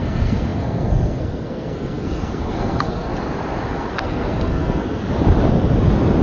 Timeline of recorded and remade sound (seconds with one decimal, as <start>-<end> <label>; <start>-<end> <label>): 0.0-3.1 remade; 3.1-3.7 recorded; 3.7-5.0 remade; 5.0-6.2 recorded